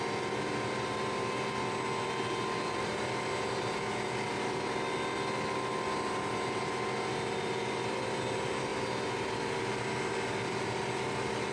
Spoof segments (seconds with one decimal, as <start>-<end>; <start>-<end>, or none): none